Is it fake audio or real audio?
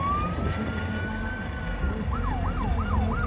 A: real